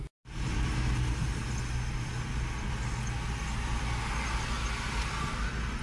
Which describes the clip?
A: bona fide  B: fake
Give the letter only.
A